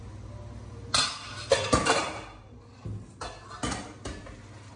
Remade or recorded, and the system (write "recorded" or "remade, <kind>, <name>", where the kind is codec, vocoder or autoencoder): recorded